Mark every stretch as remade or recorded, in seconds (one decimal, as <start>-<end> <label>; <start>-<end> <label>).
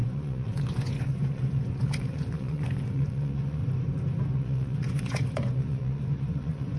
0.0-3.6 remade; 3.6-4.2 recorded; 4.2-6.8 remade